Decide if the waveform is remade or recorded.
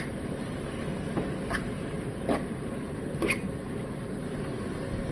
recorded